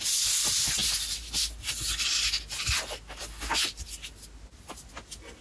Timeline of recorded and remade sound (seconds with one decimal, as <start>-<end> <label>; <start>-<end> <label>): 0.0-5.4 recorded